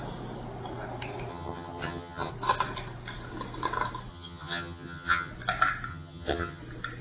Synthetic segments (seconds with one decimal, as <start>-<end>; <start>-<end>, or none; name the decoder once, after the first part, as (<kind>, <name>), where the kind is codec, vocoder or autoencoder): 1.3-2.3 (vocoder, HiFi-GAN); 4.1-5.3; 5.9-6.6